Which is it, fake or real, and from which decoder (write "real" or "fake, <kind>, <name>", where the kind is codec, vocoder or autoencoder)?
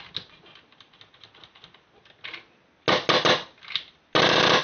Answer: real